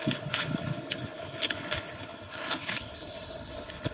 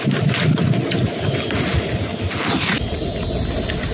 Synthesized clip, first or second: first